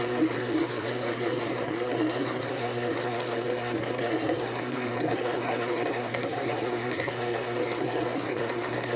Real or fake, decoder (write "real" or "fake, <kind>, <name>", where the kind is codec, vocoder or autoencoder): fake, codec, SNAC